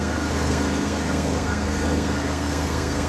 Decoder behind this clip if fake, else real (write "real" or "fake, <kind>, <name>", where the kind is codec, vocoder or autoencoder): fake, codec, SNAC